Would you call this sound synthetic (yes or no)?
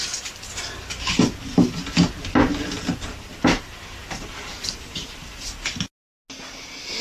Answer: no